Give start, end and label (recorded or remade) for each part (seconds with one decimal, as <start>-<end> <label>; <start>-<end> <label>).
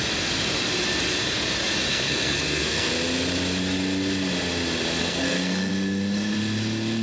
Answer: 0.0-1.9 recorded; 1.9-2.9 remade; 2.9-5.0 recorded; 5.0-5.7 remade; 5.7-7.0 recorded